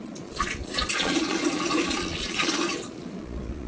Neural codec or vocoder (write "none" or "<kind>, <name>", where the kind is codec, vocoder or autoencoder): vocoder, Vocos